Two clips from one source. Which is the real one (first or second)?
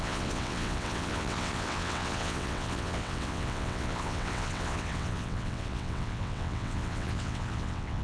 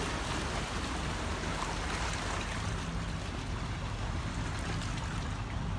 second